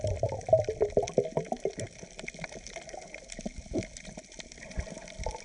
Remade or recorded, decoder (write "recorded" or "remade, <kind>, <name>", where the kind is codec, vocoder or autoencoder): recorded